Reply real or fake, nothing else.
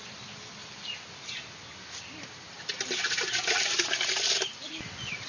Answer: real